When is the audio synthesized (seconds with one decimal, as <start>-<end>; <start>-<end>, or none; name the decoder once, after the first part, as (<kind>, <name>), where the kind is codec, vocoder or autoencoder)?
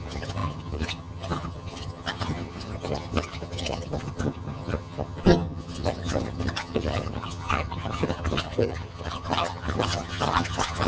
0.0-10.9 (vocoder, HiFi-GAN)